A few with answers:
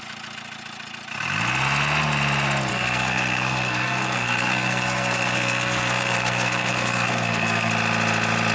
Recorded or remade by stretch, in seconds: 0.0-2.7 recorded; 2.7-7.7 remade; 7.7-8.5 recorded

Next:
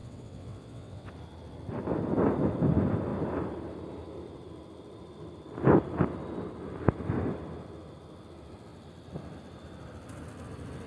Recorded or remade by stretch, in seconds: 0.0-1.1 remade; 1.1-10.9 recorded

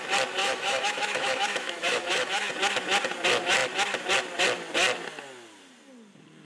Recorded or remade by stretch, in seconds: 0.0-0.4 recorded; 0.4-2.5 remade; 2.5-6.4 recorded

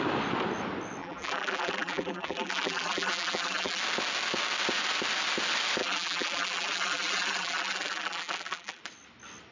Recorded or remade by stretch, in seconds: 0.0-1.0 recorded; 1.0-3.8 remade; 3.8-5.8 recorded; 5.8-8.8 remade; 8.8-9.5 recorded

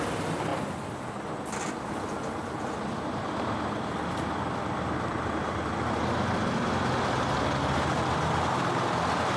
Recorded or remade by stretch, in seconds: 0.0-9.4 recorded